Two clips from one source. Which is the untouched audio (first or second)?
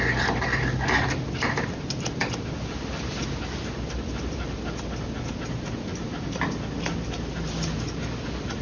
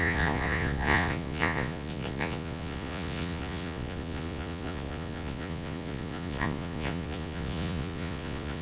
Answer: first